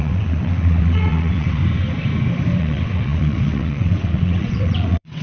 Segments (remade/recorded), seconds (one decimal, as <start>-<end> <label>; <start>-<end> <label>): 0.0-1.6 remade; 1.6-2.6 recorded; 2.6-5.2 remade